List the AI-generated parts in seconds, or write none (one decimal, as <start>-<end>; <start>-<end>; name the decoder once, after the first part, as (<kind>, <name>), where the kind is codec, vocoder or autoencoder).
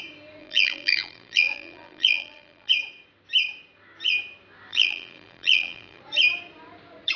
0.4-2.7 (vocoder, BigVGAN v2); 4.7-6.0